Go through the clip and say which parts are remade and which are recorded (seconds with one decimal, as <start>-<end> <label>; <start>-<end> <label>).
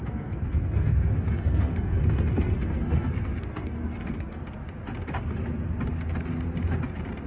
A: 0.0-4.4 remade; 4.4-7.3 recorded